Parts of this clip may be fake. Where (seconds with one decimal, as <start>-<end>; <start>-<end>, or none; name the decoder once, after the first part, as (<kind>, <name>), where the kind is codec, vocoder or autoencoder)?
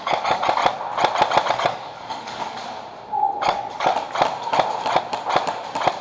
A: 0.0-0.6 (codec, DAC); 1.5-2.6; 3.4-3.9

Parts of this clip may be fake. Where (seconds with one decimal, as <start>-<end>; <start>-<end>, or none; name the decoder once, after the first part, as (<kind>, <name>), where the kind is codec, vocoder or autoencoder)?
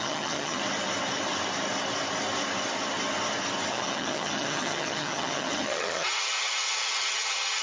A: 0.0-0.6 (vocoder, HiFi-GAN); 3.7-7.6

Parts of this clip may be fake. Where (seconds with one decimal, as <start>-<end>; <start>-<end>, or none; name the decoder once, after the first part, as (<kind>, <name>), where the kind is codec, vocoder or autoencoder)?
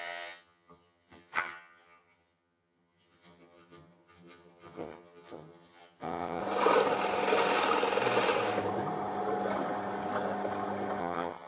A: 0.0-6.4 (vocoder, HiFi-GAN); 11.0-11.5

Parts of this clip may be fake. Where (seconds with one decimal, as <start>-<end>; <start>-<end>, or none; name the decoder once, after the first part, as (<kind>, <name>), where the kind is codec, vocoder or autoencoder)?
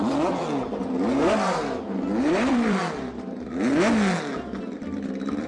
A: 0.0-0.4 (vocoder, BigVGAN v2); 2.2-2.8; 5.1-5.5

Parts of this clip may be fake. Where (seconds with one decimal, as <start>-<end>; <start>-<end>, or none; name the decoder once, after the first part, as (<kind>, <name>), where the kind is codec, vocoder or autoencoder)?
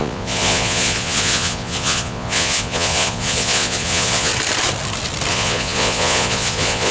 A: 0.0-4.3 (vocoder, Vocos); 5.3-6.9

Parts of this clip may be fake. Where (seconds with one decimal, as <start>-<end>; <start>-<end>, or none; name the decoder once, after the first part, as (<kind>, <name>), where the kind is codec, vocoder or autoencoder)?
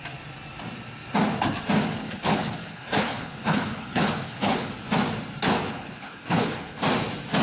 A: 2.0-4.7 (codec, HILCodec); 5.7-6.8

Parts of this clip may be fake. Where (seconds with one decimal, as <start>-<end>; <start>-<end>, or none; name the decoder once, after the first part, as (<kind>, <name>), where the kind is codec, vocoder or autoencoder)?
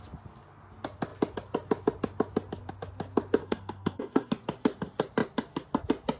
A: 3.4-4.3 (codec, SNAC)